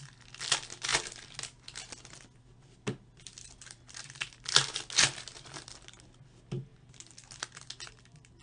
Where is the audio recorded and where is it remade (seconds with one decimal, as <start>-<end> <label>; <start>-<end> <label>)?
0.0-8.4 recorded